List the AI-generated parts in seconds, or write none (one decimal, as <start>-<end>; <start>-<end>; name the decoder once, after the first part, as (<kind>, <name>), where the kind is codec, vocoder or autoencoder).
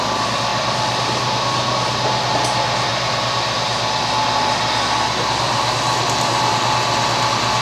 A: none